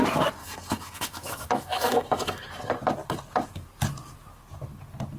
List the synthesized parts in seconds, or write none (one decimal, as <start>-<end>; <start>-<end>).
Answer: 0.4-2.4